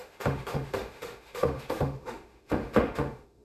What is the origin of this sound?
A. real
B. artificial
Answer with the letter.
B